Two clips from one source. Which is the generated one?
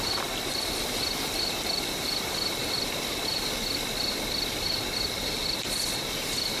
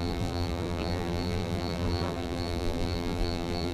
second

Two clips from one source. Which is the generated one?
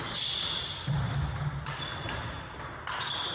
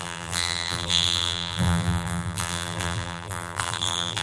second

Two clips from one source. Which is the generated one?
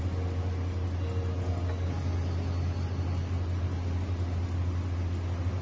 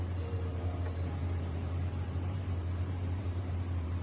second